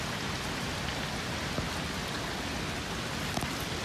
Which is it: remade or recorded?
recorded